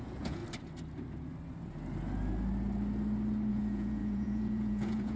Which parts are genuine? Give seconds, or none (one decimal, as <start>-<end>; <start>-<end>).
0.4-3.5